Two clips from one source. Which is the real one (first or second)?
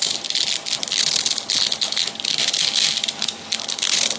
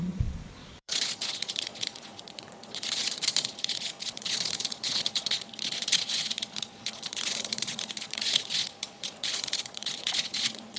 first